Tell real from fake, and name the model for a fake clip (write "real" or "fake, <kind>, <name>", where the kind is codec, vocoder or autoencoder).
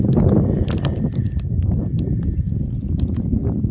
real